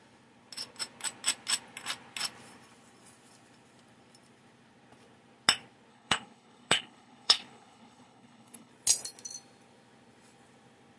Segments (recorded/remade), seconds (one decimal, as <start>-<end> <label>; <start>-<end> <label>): 0.0-5.9 recorded; 5.9-8.7 remade; 8.7-11.0 recorded